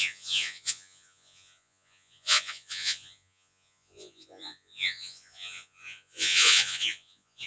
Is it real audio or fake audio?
fake